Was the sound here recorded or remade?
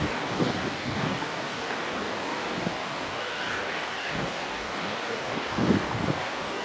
remade